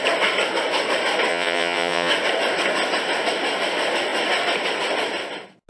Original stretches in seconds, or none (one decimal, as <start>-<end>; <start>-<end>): 0.0-1.3; 2.1-5.7